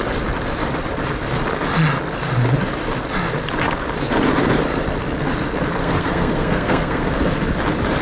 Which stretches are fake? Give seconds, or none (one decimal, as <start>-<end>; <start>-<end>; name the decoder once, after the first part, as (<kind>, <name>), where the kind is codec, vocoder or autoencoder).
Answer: 5.8-7.1 (codec, SNAC)